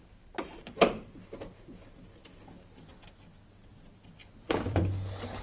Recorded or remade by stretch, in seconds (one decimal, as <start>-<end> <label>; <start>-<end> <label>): 0.0-4.2 recorded; 4.2-4.8 remade; 4.8-5.4 recorded